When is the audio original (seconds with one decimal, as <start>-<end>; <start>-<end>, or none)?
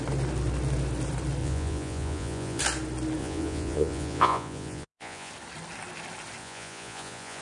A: 0.0-1.4; 2.6-3.2; 5.3-6.4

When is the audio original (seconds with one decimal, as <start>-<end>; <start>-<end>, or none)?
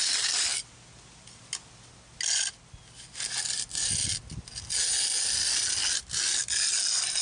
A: 0.0-7.2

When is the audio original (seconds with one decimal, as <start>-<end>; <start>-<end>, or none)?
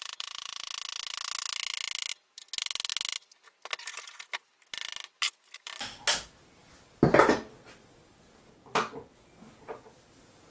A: 0.0-10.5